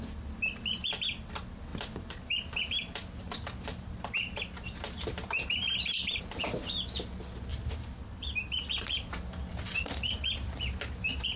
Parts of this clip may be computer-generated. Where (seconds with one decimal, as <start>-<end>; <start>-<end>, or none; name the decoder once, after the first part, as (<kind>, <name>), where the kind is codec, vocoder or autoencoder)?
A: 1.7-6.2 (vocoder, BigVGAN v2); 7.5-10.7